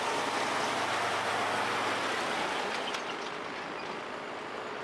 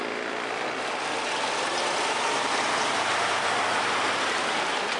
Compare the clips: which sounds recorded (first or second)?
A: first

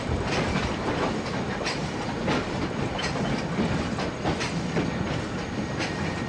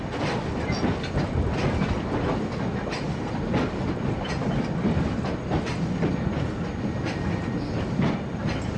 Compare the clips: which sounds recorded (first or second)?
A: second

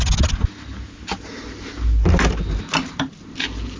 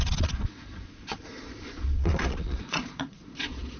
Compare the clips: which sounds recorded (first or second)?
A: first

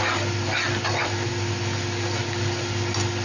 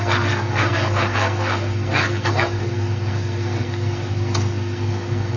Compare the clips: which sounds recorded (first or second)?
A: first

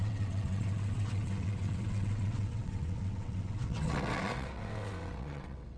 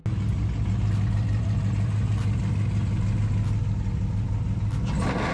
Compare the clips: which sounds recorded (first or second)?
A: second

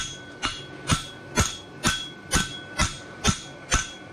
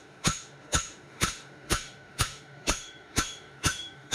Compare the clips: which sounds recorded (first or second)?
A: first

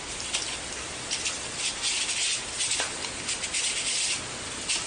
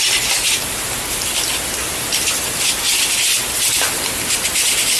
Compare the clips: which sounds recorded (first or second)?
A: first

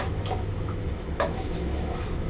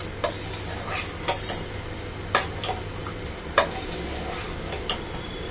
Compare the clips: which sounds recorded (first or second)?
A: second